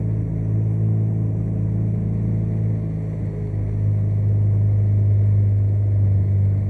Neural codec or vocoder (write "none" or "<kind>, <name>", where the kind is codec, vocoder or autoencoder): none